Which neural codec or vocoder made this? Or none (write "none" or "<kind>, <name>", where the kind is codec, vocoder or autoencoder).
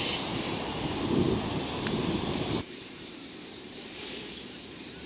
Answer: vocoder, BigVGAN v2